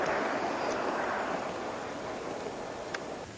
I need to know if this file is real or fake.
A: real